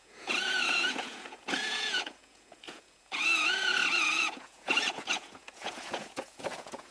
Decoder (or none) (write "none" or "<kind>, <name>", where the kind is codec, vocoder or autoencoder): vocoder, Vocos